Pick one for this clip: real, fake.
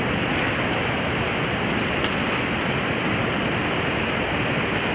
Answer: real